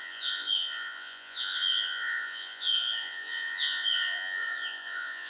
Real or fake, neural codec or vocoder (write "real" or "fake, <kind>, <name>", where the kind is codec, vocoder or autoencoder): fake, vocoder, Vocos